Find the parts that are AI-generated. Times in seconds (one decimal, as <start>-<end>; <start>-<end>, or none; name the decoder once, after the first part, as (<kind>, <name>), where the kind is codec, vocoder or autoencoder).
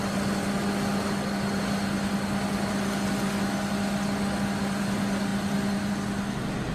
none